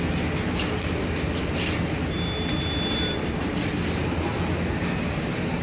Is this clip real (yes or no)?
yes